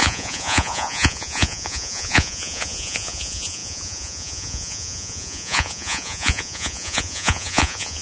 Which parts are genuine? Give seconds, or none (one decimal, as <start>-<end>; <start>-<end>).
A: none